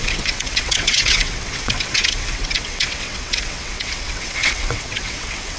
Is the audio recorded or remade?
remade